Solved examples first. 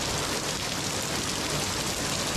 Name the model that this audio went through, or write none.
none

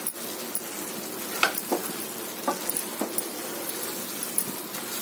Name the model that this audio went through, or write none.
none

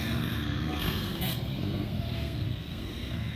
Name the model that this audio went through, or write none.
codec, SNAC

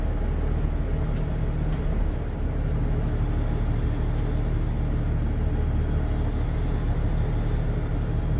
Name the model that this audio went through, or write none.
none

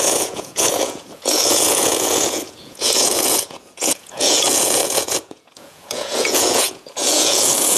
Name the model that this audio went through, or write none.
vocoder, Vocos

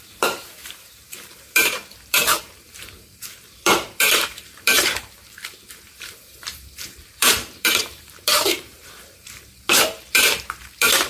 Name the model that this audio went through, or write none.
vocoder, BigVGAN v2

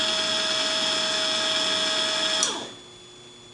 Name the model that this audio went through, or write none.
none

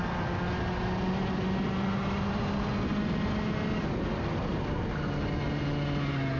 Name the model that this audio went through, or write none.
none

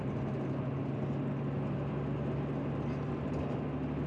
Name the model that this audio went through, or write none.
none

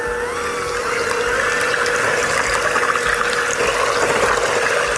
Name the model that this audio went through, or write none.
none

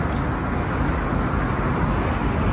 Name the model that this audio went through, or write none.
none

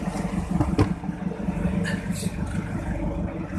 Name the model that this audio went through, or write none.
none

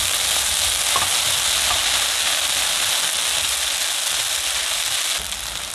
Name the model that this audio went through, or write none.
none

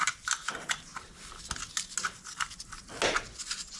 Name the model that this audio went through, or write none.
none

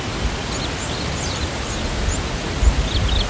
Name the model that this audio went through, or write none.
none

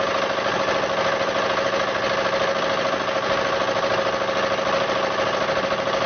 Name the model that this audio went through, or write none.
none